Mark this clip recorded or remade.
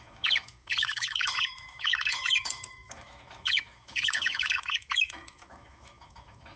remade